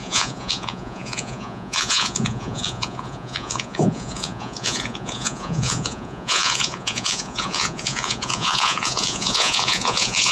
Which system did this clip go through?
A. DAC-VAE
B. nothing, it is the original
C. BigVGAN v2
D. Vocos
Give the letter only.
D